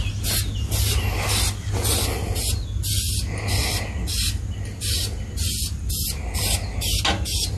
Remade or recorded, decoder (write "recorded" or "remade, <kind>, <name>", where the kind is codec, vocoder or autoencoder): recorded